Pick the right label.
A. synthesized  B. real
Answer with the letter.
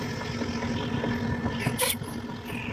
B